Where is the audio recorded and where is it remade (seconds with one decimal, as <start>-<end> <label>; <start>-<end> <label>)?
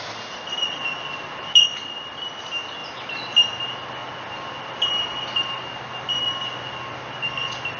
0.0-7.8 recorded